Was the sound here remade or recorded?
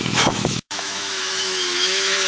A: remade